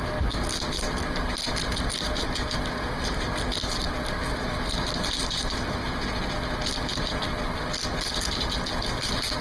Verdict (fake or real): real